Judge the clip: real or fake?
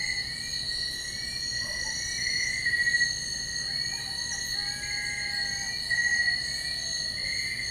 real